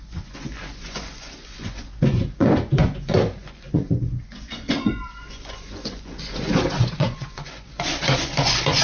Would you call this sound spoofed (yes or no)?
yes